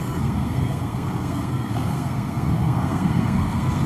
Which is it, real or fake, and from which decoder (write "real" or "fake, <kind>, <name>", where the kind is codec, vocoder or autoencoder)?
fake, codec, SNAC